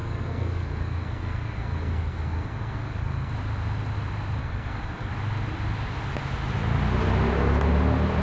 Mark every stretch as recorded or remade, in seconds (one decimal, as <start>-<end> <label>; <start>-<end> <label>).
0.0-3.3 remade; 3.3-4.4 recorded; 4.4-5.1 remade; 5.1-8.2 recorded

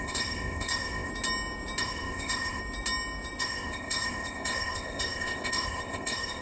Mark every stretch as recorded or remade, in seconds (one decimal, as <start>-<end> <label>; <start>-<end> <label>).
0.0-1.1 remade; 1.1-1.8 recorded; 1.8-2.6 remade; 2.6-3.4 recorded; 3.4-6.4 remade

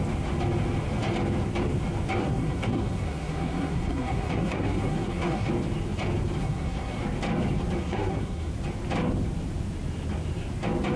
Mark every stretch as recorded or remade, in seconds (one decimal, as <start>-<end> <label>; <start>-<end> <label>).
0.0-2.2 recorded; 2.2-5.5 remade; 5.5-6.4 recorded; 6.4-7.0 remade; 7.0-7.8 recorded; 7.8-8.5 remade; 8.5-11.0 recorded

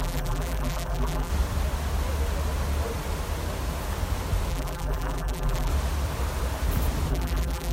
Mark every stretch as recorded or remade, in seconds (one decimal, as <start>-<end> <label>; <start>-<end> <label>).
0.0-1.3 remade; 1.3-4.5 recorded; 4.5-5.7 remade; 5.7-7.1 recorded; 7.1-7.7 remade

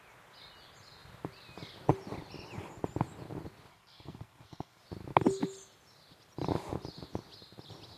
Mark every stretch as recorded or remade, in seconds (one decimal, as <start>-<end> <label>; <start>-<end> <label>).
0.0-3.7 recorded; 3.7-4.8 remade; 4.8-8.0 recorded

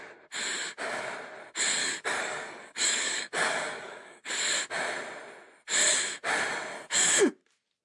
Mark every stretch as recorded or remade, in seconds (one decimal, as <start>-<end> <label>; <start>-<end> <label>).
0.0-1.8 recorded; 1.8-4.3 remade; 4.3-7.8 recorded